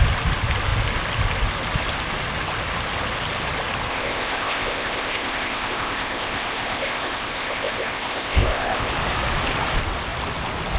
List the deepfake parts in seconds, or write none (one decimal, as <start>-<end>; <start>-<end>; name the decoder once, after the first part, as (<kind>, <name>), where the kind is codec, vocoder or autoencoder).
3.9-8.9 (codec, ZipCodec)